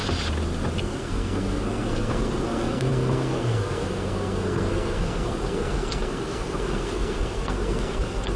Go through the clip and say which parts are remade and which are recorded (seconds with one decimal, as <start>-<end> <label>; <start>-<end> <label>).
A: 0.0-0.8 recorded; 0.8-8.4 remade